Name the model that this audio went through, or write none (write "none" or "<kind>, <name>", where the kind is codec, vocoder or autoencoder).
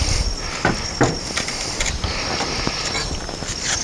none